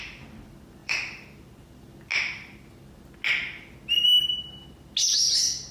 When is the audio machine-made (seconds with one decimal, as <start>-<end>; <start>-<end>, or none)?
0.8-1.4